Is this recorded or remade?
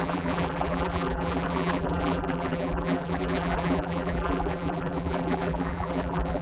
remade